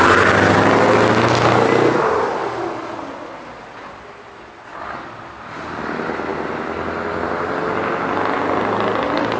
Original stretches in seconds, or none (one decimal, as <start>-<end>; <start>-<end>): 0.0-9.4